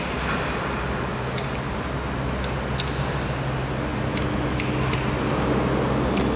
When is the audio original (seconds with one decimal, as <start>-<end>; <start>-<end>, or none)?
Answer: 0.0-6.4